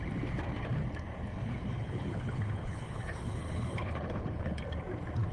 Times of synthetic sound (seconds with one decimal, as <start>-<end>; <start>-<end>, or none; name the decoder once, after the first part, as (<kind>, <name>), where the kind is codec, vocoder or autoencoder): 1.4-4.6 (codec, HILCodec)